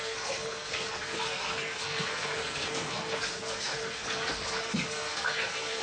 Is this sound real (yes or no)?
no